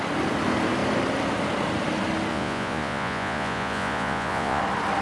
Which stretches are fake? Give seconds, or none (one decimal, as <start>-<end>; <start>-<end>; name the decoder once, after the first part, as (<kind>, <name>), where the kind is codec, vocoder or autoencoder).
2.3-4.6 (vocoder, Vocos)